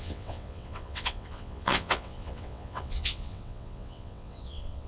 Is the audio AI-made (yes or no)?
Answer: yes